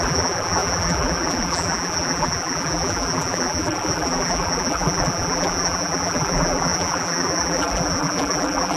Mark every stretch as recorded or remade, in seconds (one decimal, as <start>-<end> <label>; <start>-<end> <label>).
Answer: 0.0-8.8 remade